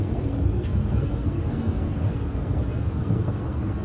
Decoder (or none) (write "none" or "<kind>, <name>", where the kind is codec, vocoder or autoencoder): codec, SNAC